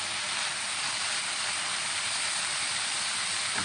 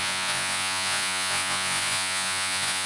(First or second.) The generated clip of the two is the second